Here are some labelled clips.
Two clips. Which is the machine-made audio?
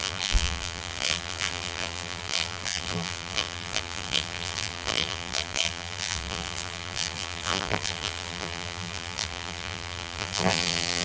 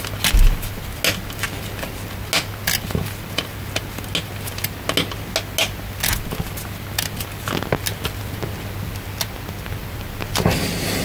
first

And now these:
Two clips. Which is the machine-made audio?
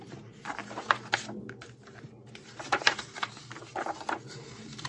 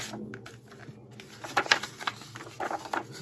first